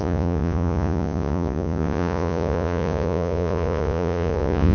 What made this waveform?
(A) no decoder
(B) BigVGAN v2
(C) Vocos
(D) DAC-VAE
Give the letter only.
C